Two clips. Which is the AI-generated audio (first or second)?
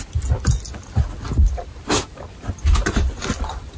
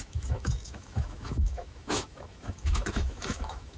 second